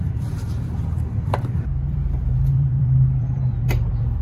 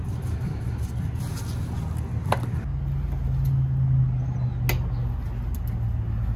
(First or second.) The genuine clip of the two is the second